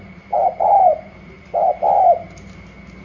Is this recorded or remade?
recorded